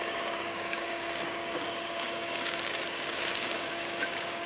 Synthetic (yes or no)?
yes